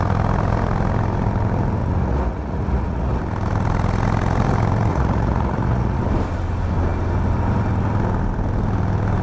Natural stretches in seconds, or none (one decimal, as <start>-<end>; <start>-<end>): 0.0-1.8; 3.2-4.9; 6.0-9.2